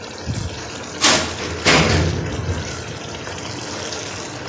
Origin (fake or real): real